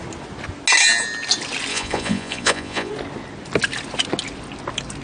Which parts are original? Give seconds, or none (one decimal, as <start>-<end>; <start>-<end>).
0.0-1.7; 2.9-5.0